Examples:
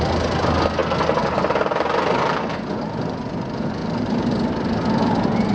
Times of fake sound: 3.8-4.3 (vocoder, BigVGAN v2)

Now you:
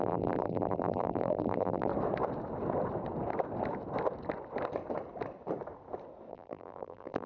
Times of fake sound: 0.0-1.9 (vocoder, BigVGAN v2); 6.3-7.3